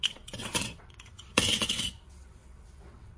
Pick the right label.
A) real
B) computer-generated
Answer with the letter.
B